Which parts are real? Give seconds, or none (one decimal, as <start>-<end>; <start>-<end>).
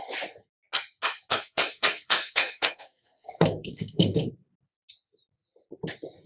0.0-1.3; 4.3-6.3